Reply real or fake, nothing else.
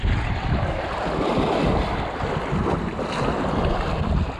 real